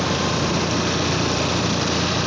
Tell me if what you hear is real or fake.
real